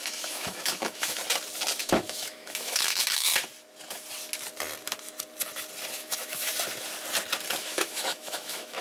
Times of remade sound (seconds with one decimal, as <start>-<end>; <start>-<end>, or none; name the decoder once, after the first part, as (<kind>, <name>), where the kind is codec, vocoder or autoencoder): 0.0-1.2 (autoencoder, DAC-VAE); 1.8-3.3; 5.9-6.5; 7.6-8.8